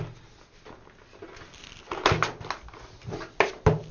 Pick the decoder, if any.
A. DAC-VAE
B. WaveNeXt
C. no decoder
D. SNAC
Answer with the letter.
C